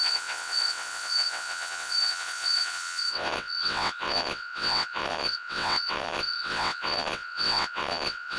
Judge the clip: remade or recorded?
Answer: remade